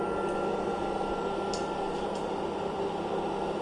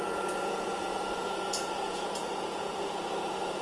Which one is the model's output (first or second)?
second